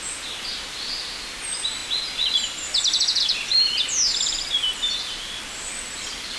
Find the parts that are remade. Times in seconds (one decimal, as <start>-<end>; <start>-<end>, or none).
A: none